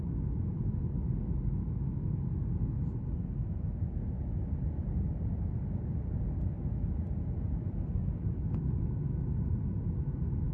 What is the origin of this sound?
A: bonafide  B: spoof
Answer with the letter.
A